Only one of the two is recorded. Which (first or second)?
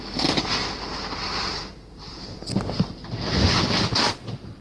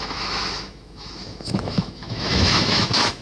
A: first